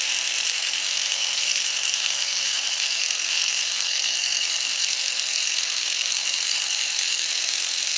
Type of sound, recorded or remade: remade